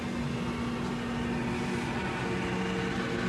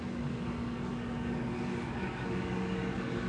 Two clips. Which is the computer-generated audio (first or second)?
second